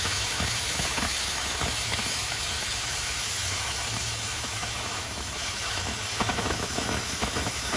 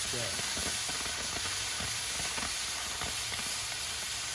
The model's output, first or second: first